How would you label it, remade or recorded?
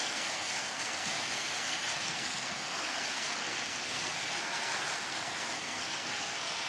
remade